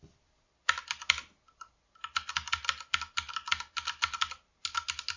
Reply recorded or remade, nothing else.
recorded